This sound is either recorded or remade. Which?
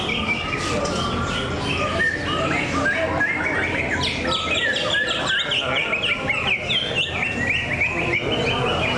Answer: recorded